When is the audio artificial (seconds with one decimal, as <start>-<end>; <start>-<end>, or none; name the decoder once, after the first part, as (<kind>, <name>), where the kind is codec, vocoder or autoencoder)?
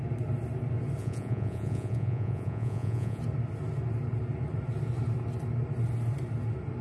1.0-3.2 (vocoder, Vocos)